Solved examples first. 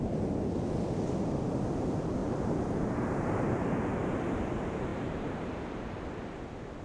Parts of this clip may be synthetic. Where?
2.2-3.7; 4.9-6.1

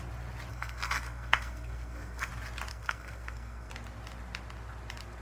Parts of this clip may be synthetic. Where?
0.5-2.3; 2.7-3.7

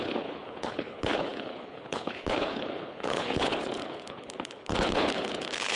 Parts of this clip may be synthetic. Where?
0.0-5.8

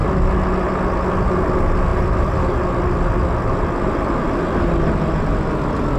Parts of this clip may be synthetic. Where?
none

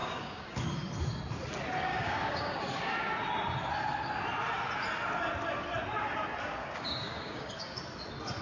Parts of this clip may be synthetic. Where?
0.0-0.6; 1.9-2.6; 6.6-7.5

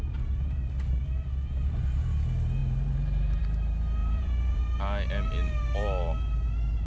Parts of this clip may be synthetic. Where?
4.0-4.6

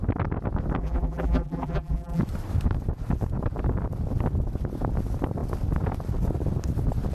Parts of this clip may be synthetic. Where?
0.8-2.2